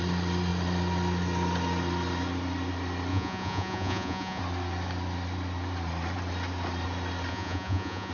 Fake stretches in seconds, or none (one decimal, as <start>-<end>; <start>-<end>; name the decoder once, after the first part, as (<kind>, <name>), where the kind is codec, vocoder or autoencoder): 3.1-4.4 (vocoder, Vocos); 7.3-8.1